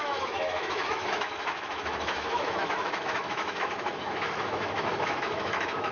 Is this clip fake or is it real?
fake